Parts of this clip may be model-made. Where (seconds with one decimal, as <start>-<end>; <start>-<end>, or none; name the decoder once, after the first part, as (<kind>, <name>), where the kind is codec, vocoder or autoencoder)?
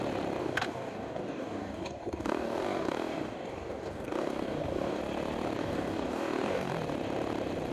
0.4-5.0 (codec, DAC); 5.6-6.7